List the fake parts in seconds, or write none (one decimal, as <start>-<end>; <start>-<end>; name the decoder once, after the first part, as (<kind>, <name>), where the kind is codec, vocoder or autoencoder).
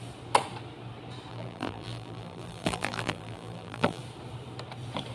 1.3-4.0 (vocoder, BigVGAN v2)